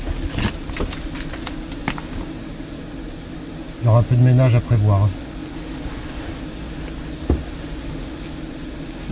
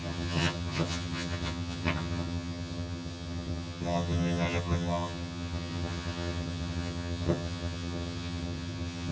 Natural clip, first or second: first